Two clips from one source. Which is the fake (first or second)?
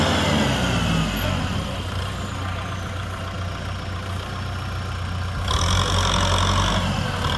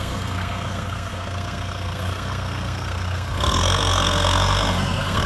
second